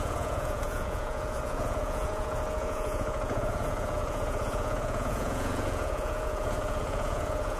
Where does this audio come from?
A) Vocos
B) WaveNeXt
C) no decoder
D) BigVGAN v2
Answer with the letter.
A